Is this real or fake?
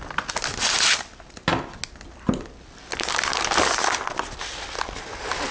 real